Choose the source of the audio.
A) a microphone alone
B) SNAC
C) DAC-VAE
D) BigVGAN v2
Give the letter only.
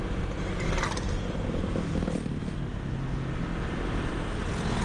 A